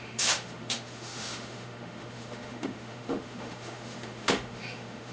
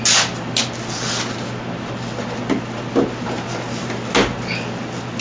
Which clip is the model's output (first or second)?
first